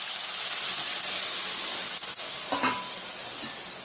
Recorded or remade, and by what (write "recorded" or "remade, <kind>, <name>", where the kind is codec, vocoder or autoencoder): recorded